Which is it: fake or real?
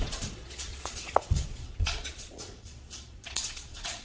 fake